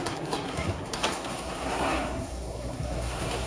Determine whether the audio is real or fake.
fake